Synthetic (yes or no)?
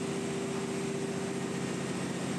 no